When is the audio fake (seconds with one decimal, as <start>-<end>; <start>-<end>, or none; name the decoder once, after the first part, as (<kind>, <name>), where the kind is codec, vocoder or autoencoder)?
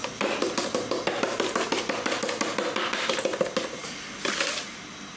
none